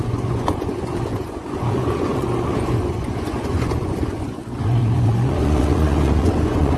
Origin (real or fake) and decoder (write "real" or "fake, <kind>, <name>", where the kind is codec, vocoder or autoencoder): fake, vocoder, Vocos